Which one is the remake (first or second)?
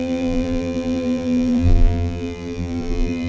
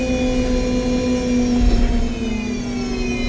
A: first